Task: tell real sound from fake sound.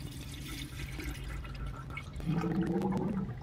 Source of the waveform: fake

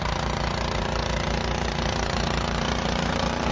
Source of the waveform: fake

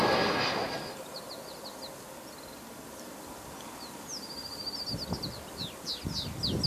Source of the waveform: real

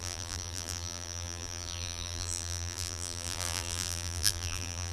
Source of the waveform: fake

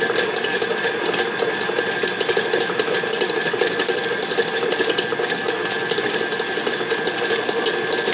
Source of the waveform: real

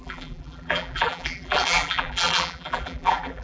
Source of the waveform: fake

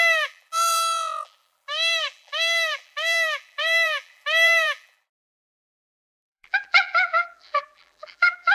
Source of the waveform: fake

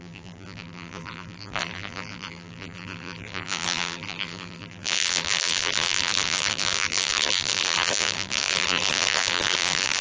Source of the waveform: fake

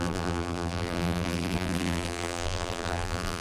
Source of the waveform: fake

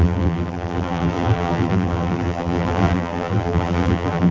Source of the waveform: fake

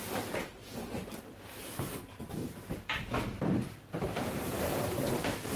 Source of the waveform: fake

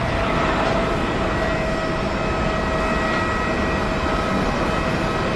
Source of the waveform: real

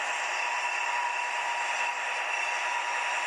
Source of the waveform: real